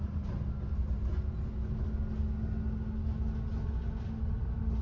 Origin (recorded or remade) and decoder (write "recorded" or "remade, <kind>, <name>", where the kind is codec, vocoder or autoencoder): recorded